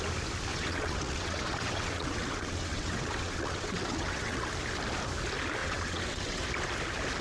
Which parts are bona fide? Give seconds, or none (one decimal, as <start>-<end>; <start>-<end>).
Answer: 0.0-0.5; 4.5-5.6; 6.4-7.2